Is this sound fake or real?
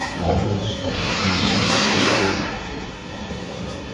fake